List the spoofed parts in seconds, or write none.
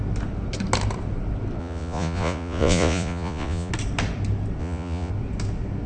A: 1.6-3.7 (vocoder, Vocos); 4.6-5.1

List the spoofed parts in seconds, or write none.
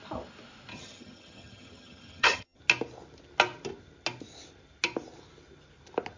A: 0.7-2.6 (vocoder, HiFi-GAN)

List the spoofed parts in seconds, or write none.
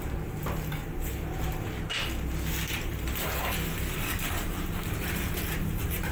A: 0.0-0.8 (vocoder, BigVGAN v2); 2.5-3.4; 4.4-6.1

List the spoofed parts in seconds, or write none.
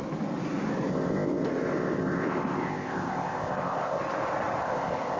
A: 0.9-4.0 (codec, ZipCodec); 4.6-5.2